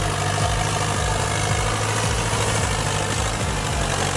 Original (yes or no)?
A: yes